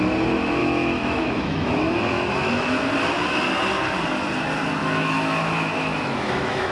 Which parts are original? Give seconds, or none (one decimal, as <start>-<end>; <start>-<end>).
0.0-0.6; 2.7-4.8